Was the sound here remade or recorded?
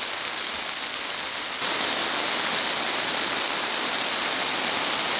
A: recorded